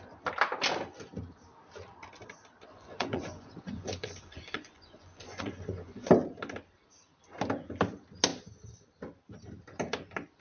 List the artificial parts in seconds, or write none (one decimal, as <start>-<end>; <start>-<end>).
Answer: 2.7-6.1